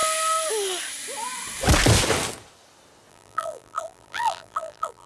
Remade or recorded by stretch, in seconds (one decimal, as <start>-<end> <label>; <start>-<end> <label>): 0.0-3.1 recorded; 3.1-5.1 remade